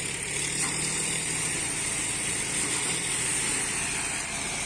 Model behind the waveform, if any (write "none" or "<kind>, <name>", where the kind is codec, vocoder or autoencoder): none